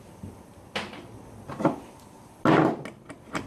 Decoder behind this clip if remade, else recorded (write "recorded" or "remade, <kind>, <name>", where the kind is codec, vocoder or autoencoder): recorded